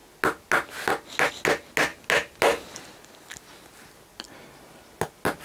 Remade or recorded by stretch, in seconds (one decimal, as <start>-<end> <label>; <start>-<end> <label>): 0.0-5.4 recorded